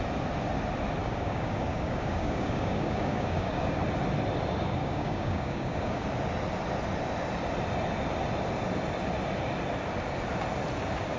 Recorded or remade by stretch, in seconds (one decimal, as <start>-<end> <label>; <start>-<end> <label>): 0.0-1.0 recorded; 1.0-3.8 remade; 3.8-4.8 recorded; 4.8-6.0 remade; 6.0-11.2 recorded